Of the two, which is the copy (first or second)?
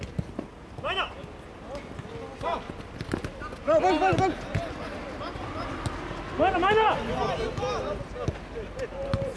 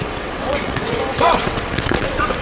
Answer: second